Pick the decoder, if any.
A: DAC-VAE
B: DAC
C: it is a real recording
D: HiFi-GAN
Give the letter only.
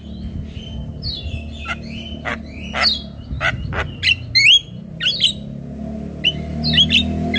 C